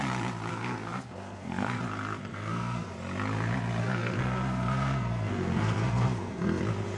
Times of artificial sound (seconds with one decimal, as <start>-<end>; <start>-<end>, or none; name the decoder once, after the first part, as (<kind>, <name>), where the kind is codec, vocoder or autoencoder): 0.5-1.8 (codec, SNAC); 2.3-2.9; 3.8-6.6